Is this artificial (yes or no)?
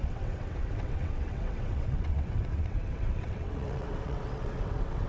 yes